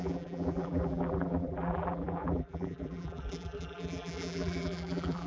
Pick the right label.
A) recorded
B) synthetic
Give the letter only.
B